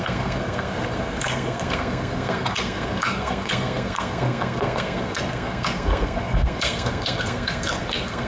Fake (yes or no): yes